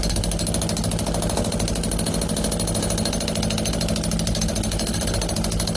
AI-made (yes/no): no